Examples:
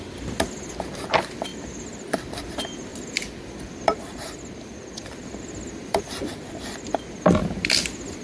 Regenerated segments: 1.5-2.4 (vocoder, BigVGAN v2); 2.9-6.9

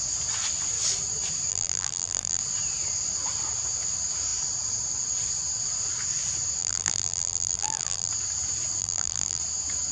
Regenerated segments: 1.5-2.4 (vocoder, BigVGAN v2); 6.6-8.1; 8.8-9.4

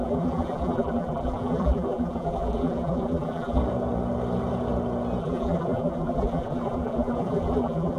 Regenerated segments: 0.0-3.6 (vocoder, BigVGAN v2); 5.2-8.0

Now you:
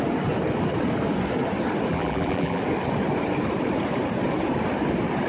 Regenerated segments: 1.9-2.6 (vocoder, BigVGAN v2)